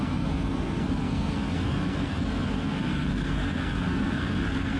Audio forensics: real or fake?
fake